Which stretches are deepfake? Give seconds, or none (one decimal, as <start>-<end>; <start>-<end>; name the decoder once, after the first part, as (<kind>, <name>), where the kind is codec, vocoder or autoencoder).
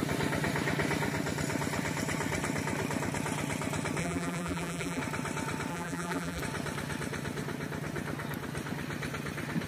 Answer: 4.0-5.0 (vocoder, BigVGAN v2); 5.7-6.4